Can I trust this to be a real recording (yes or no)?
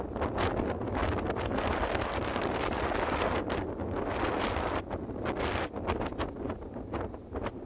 yes